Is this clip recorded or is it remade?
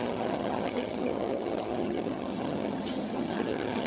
remade